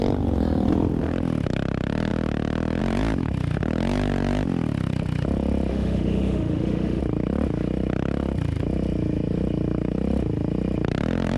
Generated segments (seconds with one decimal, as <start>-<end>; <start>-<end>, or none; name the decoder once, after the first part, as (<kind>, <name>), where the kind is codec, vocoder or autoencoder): 5.7-7.0 (autoencoder, DAC-VAE)